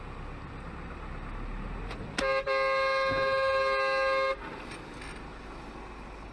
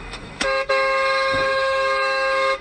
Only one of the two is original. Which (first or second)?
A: first